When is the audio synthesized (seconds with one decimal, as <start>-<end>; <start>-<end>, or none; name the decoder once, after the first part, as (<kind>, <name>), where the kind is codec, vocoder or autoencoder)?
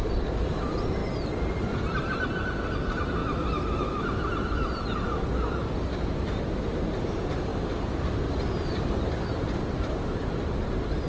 0.0-1.0 (vocoder, BigVGAN v2); 1.6-3.2; 6.7-7.5; 8.2-11.1